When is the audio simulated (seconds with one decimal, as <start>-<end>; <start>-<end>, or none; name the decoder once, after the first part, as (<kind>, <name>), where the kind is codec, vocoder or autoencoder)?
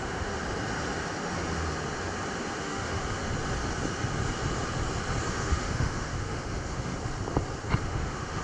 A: 0.0-0.4 (autoencoder, DAC-VAE); 2.6-3.0; 5.3-6.9; 7.8-8.4